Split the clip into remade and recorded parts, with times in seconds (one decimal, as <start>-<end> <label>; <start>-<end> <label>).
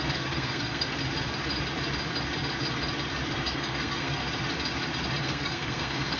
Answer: 0.0-1.0 remade; 1.0-3.3 recorded; 3.3-4.2 remade; 4.2-5.2 recorded; 5.2-6.2 remade